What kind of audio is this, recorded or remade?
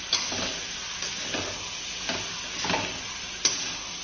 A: recorded